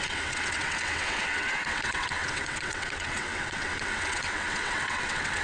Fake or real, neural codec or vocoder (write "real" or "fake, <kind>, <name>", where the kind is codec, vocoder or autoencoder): fake, vocoder, WaveNeXt